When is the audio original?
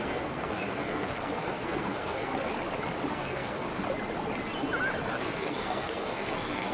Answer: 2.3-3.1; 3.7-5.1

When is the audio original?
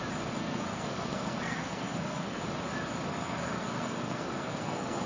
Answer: 0.0-0.4; 2.4-3.1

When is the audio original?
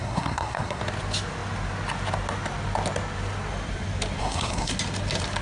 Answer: 0.8-4.2; 4.7-5.4